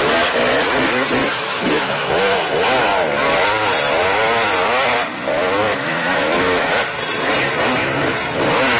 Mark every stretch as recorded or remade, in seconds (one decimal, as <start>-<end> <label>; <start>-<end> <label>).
0.0-1.2 recorded; 1.2-2.1 remade; 2.1-5.6 recorded; 5.6-6.8 remade; 6.8-8.8 recorded